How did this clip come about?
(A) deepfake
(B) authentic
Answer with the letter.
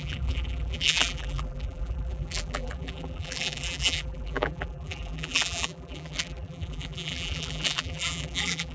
A